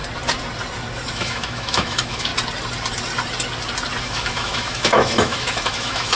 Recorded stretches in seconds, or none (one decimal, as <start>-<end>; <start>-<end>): 0.0-1.1; 2.3-4.0